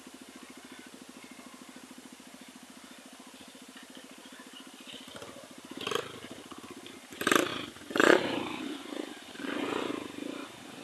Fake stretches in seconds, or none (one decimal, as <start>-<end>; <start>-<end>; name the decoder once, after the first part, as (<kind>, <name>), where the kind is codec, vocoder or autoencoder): 7.5-9.9 (vocoder, Vocos)